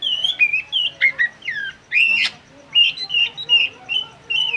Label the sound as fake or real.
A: real